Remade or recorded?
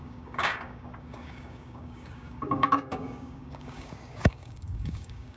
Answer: remade